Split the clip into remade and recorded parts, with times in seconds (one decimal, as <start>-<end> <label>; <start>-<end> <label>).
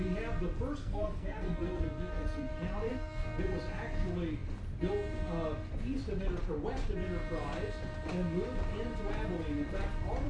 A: 0.0-0.8 recorded; 0.8-2.5 remade; 2.5-2.9 recorded; 2.9-3.4 remade; 3.4-10.3 recorded